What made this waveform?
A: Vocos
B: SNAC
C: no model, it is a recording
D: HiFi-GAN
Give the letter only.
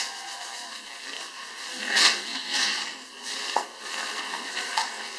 B